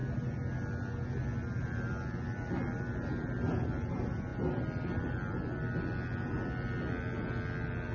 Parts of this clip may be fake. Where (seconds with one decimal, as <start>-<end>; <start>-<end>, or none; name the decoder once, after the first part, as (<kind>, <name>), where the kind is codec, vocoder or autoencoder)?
none